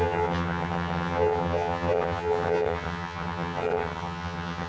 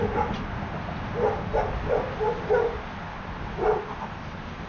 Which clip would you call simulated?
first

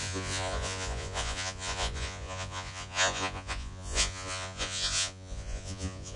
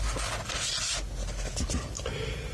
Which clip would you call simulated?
first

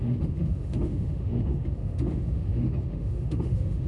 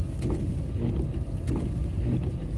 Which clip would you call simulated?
first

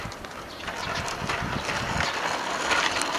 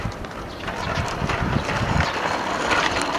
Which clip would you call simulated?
second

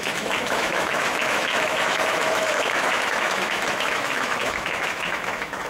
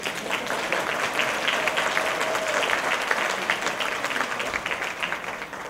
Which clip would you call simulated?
first